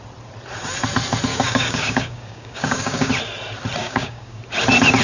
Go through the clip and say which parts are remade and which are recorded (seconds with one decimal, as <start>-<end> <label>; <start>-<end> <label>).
0.0-1.3 recorded; 1.3-3.1 remade; 3.1-3.8 recorded; 3.8-4.4 remade; 4.4-5.0 recorded